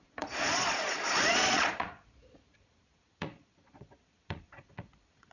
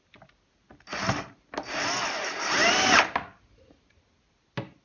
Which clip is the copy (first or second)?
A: first